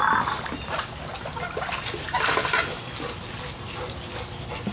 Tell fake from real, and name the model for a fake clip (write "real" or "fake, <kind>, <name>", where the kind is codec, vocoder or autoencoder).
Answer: real